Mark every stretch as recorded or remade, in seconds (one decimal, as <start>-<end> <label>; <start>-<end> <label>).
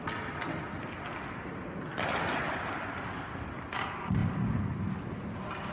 0.0-5.7 recorded